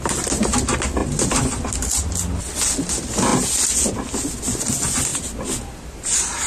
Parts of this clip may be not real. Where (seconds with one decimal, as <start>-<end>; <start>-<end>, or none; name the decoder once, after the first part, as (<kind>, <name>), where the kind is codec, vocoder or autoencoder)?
1.0-1.7 (vocoder, BigVGAN v2)